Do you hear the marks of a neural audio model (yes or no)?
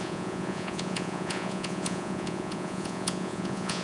yes